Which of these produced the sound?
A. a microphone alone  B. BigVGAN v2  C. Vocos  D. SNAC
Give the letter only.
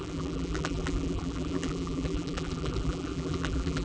B